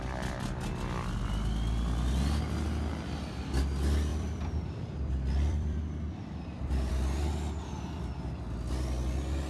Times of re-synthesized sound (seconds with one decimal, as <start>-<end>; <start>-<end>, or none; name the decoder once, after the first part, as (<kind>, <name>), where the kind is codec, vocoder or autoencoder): 4.1-6.9 (vocoder, BigVGAN v2)